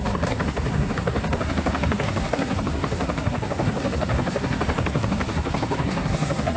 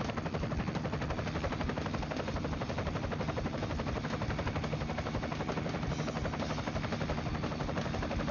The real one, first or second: second